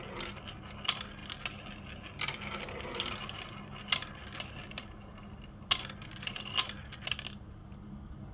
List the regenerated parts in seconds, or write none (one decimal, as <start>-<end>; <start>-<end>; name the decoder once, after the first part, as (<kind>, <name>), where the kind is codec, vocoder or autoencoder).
none